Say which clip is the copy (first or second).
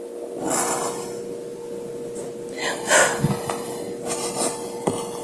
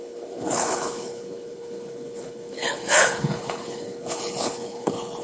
second